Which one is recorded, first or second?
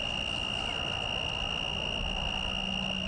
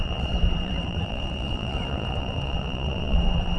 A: first